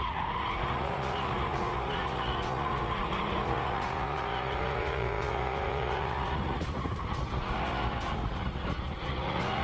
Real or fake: fake